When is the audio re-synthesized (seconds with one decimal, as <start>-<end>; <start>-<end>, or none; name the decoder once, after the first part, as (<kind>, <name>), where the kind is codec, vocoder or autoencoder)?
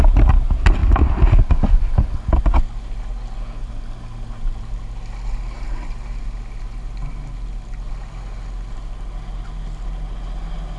none